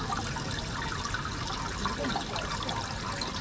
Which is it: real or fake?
real